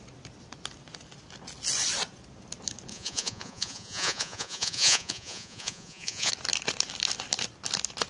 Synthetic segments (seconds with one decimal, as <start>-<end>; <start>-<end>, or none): 2.9-6.3